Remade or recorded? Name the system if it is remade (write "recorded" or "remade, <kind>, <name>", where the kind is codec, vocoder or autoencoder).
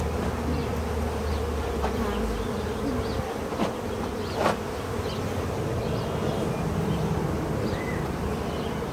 recorded